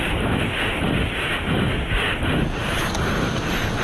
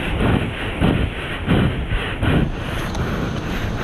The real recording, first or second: first